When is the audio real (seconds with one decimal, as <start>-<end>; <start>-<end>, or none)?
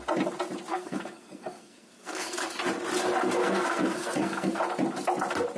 0.0-0.7; 2.5-3.4; 4.6-5.6